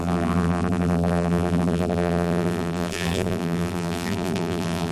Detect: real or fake fake